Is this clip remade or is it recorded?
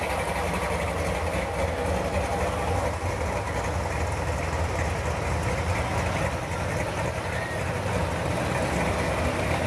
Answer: recorded